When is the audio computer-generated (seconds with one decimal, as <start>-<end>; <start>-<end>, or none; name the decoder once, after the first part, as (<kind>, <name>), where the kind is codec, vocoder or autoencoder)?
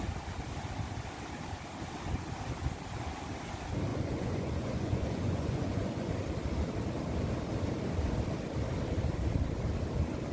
3.9-6.1 (vocoder, Vocos)